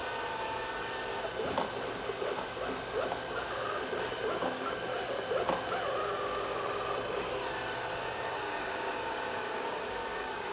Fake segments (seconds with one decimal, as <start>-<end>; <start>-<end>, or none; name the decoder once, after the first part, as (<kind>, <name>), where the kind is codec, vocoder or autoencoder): 4.2-4.9 (codec, DAC); 7.9-10.5